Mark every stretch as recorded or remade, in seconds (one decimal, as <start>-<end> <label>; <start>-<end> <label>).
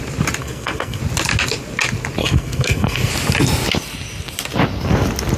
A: 0.0-0.4 recorded; 0.4-1.0 remade; 1.0-2.2 recorded; 2.2-3.1 remade; 3.1-5.4 recorded